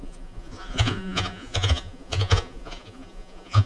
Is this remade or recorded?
remade